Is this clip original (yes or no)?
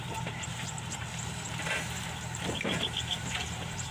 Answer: no